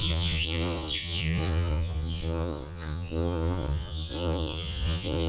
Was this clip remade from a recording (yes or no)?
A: yes